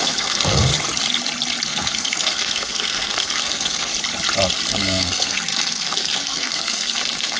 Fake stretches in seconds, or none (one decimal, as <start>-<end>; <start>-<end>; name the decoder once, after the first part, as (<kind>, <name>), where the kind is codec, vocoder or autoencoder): 0.0-0.7 (codec, SNAC); 1.7-3.9; 4.7-7.4